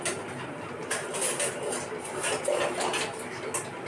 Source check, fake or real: real